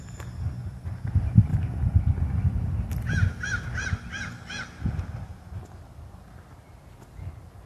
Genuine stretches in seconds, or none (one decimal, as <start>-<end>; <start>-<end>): 0.0-7.7